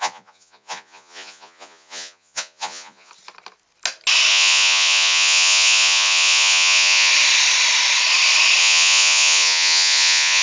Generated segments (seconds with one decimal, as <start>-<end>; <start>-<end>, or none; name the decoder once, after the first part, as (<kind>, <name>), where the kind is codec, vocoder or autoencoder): 0.0-3.1 (vocoder, Vocos); 4.3-7.1; 8.6-10.4